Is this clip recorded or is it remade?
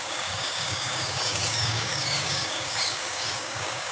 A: remade